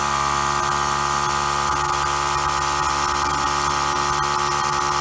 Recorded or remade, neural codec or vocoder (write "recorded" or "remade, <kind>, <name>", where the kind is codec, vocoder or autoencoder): recorded